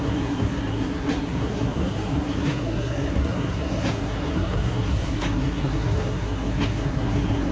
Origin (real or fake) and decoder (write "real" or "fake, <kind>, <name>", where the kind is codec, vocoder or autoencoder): fake, codec, SNAC